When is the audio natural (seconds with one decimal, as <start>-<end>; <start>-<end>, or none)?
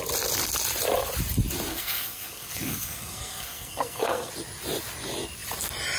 0.0-1.7; 4.3-6.0